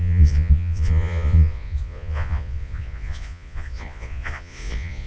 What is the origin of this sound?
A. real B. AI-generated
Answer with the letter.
B